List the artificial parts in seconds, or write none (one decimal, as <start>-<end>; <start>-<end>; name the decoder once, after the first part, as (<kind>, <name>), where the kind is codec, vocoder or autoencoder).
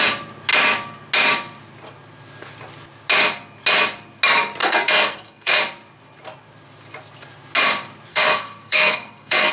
4.6-5.6 (codec, SNAC); 8.1-9.5